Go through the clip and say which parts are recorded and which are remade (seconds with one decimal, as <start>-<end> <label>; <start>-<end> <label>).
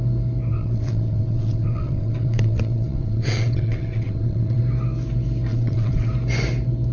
0.0-0.5 recorded; 0.5-4.6 remade; 4.6-5.5 recorded; 5.5-6.1 remade; 6.1-6.9 recorded